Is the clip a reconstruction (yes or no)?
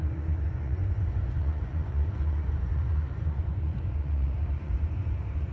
yes